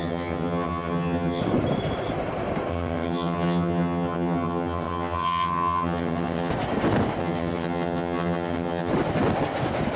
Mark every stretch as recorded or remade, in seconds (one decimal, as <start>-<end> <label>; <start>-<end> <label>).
0.0-1.4 remade; 1.4-2.7 recorded; 2.7-6.5 remade; 6.5-7.2 recorded; 7.2-8.9 remade; 8.9-10.0 recorded